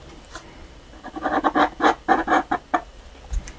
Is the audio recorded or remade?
recorded